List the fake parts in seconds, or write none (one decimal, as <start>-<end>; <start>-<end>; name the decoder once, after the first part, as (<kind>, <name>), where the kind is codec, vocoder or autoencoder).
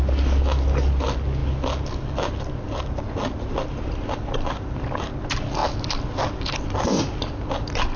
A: none